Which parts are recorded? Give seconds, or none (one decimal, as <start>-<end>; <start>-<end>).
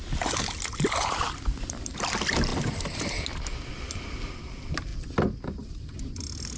0.0-6.6